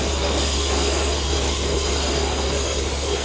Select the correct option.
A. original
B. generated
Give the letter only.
B